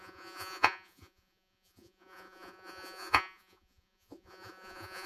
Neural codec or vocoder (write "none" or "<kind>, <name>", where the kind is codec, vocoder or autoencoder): vocoder, Vocos